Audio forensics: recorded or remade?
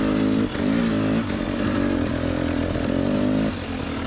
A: recorded